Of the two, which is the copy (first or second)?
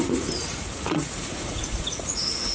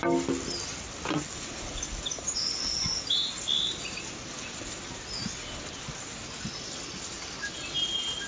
first